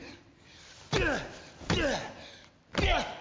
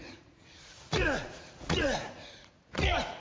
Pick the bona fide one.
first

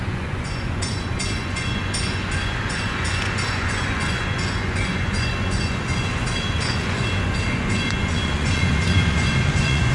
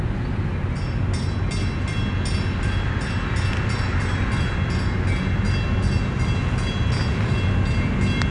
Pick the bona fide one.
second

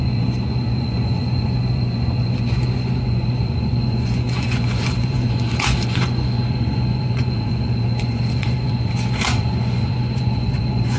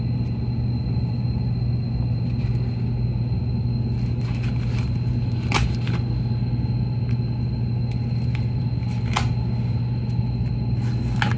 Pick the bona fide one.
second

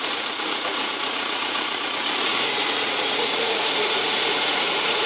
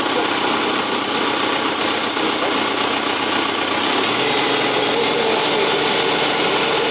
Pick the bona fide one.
second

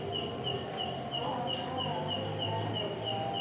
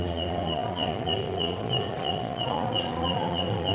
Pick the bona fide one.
first